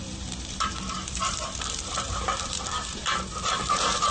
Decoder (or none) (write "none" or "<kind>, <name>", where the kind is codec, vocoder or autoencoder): vocoder, BigVGAN v2